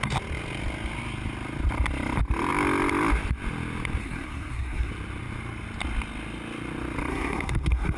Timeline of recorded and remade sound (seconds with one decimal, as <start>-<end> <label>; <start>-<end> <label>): 0.0-4.0 recorded; 4.0-4.9 remade; 4.9-7.1 recorded; 7.1-8.0 remade